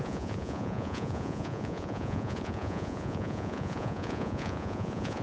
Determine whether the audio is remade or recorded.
remade